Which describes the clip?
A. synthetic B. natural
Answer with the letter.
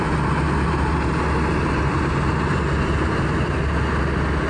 B